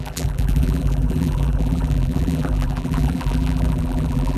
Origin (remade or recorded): remade